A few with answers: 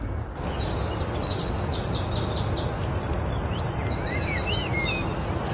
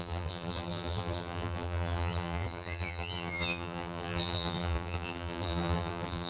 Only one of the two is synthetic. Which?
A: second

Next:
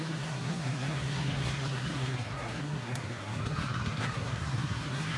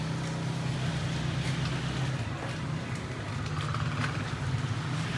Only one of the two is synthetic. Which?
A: first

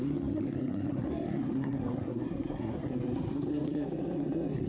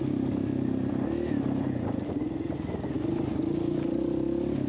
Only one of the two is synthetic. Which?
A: first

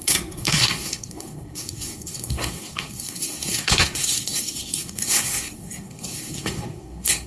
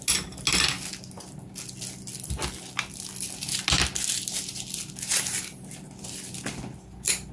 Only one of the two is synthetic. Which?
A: first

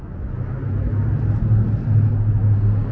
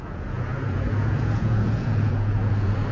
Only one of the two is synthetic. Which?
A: second